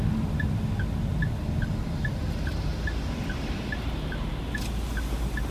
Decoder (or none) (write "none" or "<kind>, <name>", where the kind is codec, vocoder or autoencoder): none